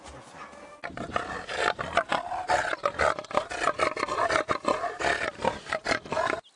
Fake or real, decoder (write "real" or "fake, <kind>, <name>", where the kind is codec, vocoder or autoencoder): real